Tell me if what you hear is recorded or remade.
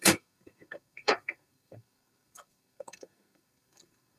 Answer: remade